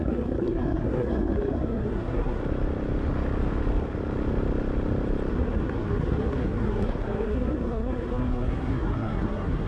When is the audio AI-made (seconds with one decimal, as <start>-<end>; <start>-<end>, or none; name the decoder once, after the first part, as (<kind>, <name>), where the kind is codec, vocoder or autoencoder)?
0.0-2.4 (codec, SNAC); 5.3-9.7